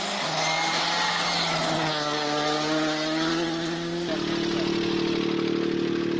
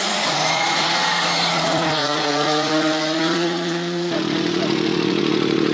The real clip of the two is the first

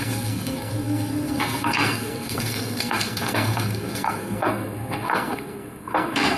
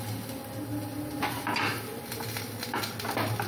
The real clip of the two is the second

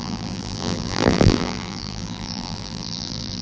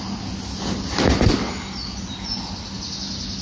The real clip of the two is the second